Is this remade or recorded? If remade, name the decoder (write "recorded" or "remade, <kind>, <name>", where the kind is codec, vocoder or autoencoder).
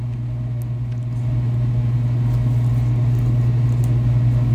recorded